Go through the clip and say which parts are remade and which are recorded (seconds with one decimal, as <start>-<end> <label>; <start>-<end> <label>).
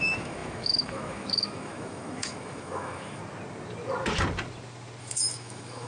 0.0-3.2 remade; 3.2-5.0 recorded; 5.0-5.9 remade